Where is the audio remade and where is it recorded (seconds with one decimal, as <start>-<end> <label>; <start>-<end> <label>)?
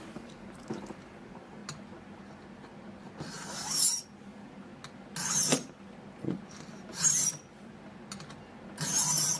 0.0-1.6 remade; 1.6-4.0 recorded; 4.0-4.7 remade; 4.7-9.4 recorded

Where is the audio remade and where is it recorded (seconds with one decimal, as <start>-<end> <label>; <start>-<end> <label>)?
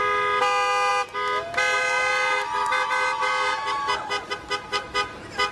0.0-5.5 recorded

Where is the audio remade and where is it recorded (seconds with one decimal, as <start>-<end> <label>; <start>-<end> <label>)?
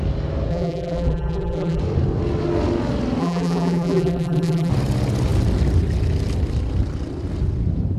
0.0-0.5 recorded; 0.5-1.8 remade; 1.8-3.2 recorded; 3.2-4.7 remade; 4.7-8.0 recorded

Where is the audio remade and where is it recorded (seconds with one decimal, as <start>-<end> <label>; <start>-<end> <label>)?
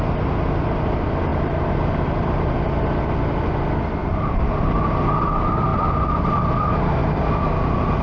0.0-1.3 recorded; 1.3-2.6 remade; 2.6-4.0 recorded; 4.0-4.9 remade; 4.9-5.7 recorded; 5.7-6.2 remade; 6.2-8.0 recorded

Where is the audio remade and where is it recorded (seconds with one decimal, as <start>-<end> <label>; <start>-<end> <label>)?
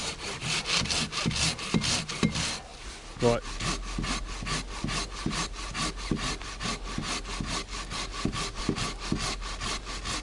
0.0-10.2 recorded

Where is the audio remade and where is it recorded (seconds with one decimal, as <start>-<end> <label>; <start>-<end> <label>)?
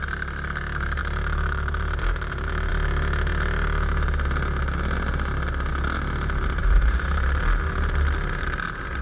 0.0-1.0 recorded; 1.0-2.7 remade; 2.7-6.6 recorded; 6.6-7.4 remade; 7.4-9.0 recorded